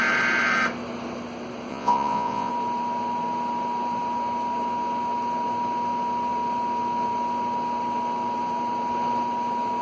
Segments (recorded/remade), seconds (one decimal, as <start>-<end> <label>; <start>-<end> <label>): 0.0-1.7 recorded; 1.7-2.5 remade; 2.5-9.8 recorded

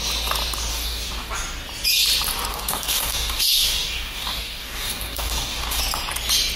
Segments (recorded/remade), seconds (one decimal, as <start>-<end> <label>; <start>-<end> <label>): 0.0-0.7 recorded; 0.7-1.3 remade; 1.3-2.5 recorded; 2.5-5.8 remade; 5.8-6.6 recorded

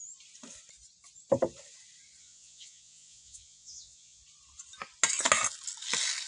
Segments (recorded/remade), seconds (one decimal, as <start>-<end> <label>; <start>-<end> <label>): 0.0-2.2 recorded; 2.2-4.2 remade; 4.2-6.3 recorded

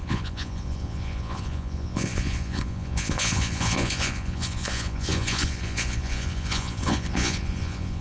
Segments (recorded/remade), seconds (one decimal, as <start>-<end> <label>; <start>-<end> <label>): 0.0-8.0 remade

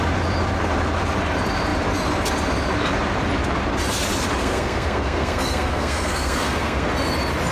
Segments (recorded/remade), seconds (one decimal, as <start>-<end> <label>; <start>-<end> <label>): 0.0-4.4 recorded; 4.4-6.9 remade; 6.9-7.5 recorded

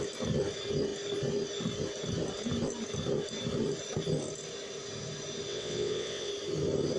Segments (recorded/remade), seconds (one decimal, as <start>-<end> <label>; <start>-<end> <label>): 0.0-5.5 recorded; 5.5-6.3 remade; 6.3-7.0 recorded

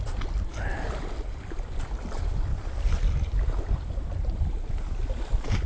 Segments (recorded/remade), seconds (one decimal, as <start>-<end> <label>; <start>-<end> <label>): 0.0-5.7 recorded